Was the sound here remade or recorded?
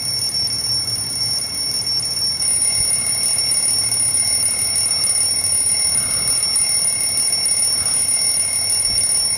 recorded